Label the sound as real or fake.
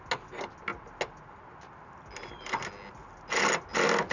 real